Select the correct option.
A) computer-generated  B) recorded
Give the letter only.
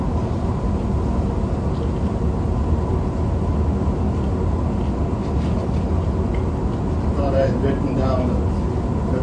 B